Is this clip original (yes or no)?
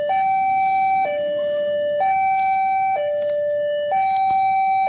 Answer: no